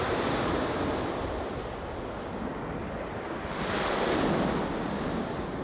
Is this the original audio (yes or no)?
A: yes